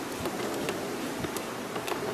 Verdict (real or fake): real